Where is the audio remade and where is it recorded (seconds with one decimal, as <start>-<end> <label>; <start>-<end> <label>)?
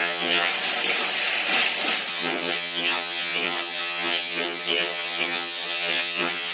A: 0.0-0.5 remade; 0.5-2.1 recorded; 2.1-6.5 remade